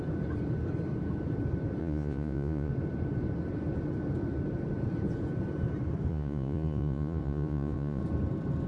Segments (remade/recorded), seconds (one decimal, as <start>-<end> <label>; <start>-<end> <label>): 0.0-1.8 recorded; 1.8-2.7 remade; 2.7-6.1 recorded; 6.1-8.0 remade; 8.0-8.7 recorded